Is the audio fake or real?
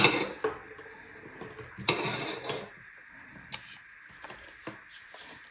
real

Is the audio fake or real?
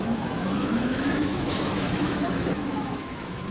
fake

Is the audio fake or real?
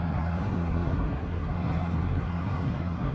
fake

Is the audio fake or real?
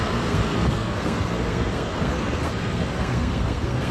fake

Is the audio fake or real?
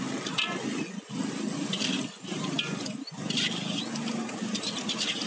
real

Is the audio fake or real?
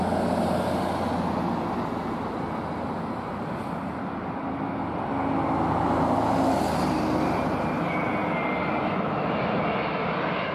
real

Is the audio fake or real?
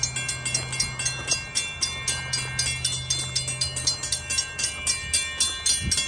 real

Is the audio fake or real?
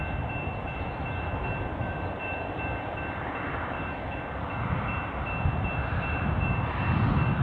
fake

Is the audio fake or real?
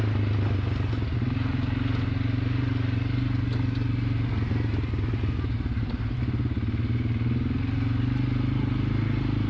real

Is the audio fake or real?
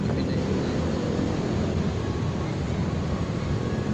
real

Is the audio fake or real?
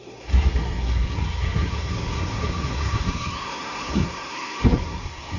fake